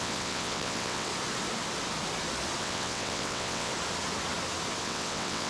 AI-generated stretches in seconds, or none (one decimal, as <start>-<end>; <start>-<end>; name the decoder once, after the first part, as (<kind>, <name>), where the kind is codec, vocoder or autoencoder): 0.0-1.1 (vocoder, WaveNeXt); 2.6-3.7; 4.8-5.5